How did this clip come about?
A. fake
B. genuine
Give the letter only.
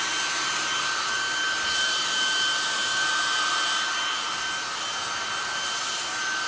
B